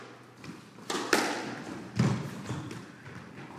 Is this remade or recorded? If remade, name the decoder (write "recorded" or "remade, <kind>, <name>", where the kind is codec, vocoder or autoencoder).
recorded